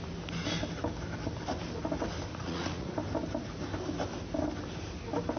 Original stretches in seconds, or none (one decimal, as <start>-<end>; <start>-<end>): 0.0-2.3; 2.9-5.4